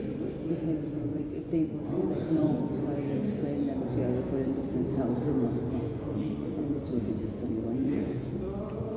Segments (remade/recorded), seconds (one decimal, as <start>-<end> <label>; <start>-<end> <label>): 0.0-1.1 recorded; 1.1-2.6 remade; 2.6-5.8 recorded; 5.8-8.3 remade; 8.3-9.0 recorded